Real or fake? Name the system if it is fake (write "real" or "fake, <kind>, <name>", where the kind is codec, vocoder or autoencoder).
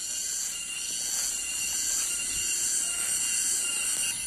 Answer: real